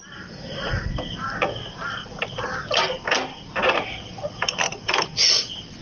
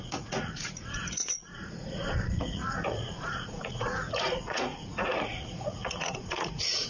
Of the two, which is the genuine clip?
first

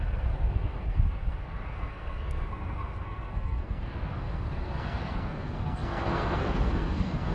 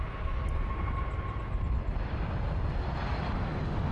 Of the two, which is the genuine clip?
second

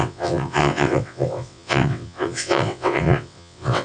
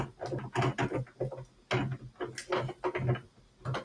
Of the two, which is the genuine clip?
second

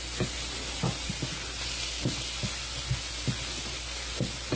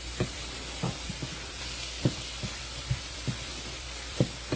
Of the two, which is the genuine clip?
first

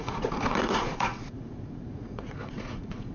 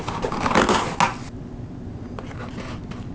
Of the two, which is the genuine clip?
second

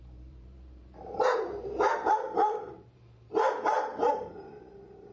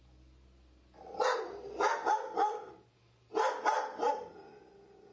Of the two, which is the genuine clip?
second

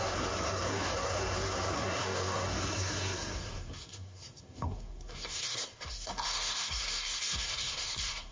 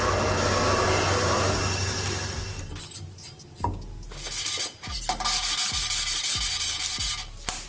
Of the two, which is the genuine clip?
second